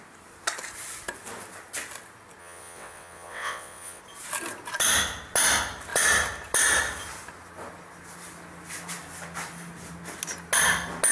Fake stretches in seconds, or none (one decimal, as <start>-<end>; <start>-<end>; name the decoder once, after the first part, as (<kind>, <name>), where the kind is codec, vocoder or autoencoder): 2.4-4.0 (vocoder, WaveNeXt)